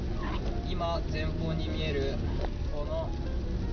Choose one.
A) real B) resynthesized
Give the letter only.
A